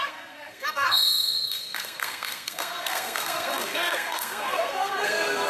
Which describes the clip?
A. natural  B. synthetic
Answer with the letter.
B